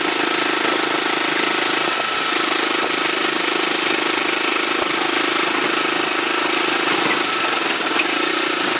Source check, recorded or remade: recorded